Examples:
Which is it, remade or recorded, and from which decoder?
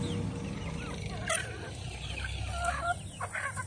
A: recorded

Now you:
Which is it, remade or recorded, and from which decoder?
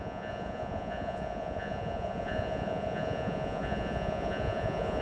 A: remade, vocoder, Vocos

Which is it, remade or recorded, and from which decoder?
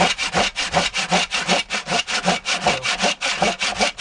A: recorded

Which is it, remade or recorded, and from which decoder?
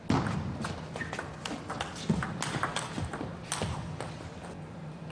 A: recorded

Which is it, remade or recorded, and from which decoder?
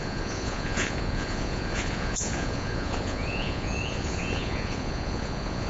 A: remade, vocoder, Vocos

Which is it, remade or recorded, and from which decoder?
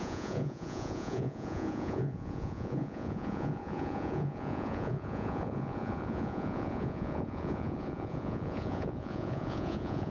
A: remade, vocoder, Vocos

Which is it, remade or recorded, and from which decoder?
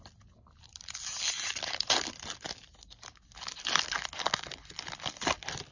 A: recorded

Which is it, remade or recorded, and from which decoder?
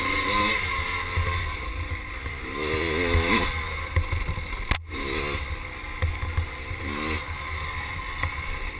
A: recorded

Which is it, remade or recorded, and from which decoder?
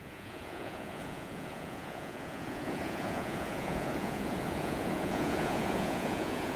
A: remade, vocoder, Vocos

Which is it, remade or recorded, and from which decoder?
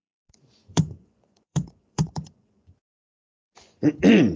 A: remade, vocoder, Vocos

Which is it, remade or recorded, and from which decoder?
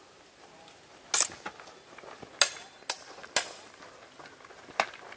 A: recorded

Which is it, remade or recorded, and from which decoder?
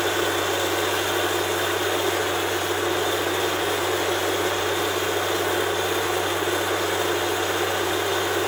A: recorded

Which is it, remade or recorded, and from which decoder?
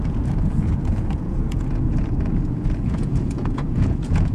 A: remade, vocoder, Vocos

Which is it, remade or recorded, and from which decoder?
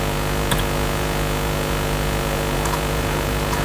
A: remade, vocoder, Vocos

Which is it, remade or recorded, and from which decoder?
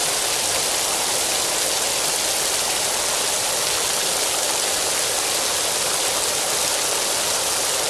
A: recorded